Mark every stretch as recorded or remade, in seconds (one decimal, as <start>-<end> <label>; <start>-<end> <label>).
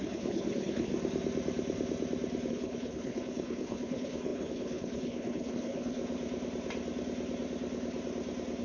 0.0-0.9 remade; 0.9-2.5 recorded; 2.5-6.0 remade; 6.0-8.6 recorded